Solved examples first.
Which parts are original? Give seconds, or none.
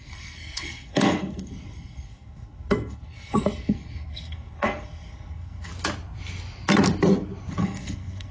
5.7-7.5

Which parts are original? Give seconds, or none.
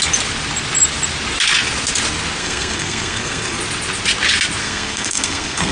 0.0-2.4; 3.6-4.6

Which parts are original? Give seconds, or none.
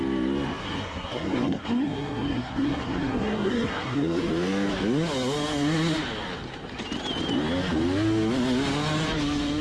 0.0-0.6; 4.3-9.6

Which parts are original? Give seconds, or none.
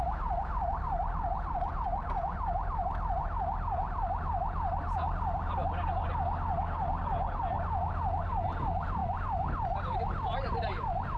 0.0-11.2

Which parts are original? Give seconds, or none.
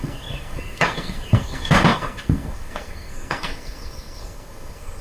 none